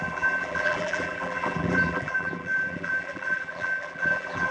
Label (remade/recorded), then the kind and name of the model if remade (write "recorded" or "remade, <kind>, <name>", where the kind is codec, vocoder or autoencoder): remade, vocoder, BigVGAN v2